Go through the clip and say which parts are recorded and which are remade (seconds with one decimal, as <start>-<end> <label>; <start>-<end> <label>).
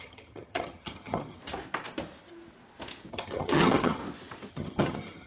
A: 0.0-1.4 remade; 1.4-3.1 recorded; 3.1-4.0 remade; 4.0-4.5 recorded; 4.5-5.3 remade